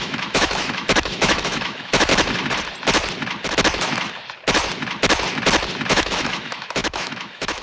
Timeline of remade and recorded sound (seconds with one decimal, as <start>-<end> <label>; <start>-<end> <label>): 0.0-2.1 remade; 2.1-5.9 recorded; 5.9-7.6 remade